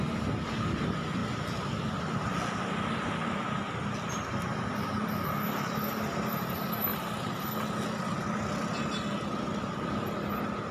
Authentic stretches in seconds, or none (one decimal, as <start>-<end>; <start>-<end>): 0.0-10.7